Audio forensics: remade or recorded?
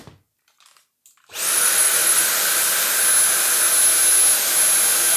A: recorded